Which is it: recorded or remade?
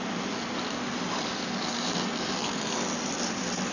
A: remade